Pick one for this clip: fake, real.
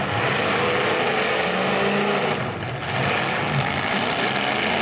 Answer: real